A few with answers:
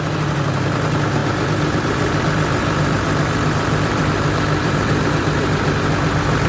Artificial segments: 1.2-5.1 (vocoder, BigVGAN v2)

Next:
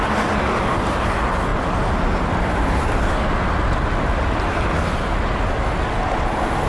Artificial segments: none

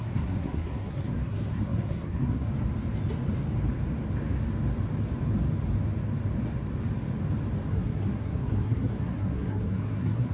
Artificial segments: 0.0-2.5 (codec, SNAC); 7.7-10.3

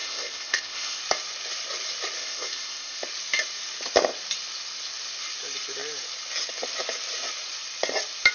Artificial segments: 0.0-1.0 (codec, ZipCodec); 2.2-3.0

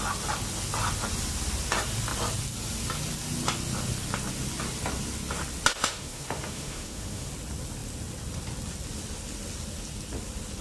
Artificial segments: 5.7-7.3 (autoencoder, DAC-VAE)

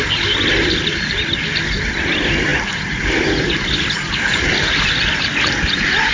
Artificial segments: none

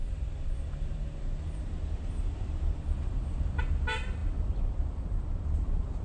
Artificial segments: 0.0-3.6 (vocoder, BigVGAN v2)